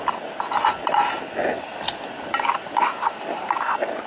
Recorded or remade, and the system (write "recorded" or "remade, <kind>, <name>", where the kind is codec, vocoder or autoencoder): recorded